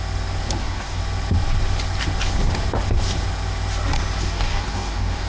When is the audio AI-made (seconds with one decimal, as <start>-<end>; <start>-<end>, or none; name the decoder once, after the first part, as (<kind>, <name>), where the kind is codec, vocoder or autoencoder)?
0.6-1.0 (codec, DAC); 4.2-5.3